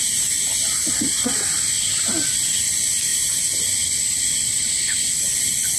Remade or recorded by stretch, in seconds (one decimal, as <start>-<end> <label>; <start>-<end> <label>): 0.0-5.8 recorded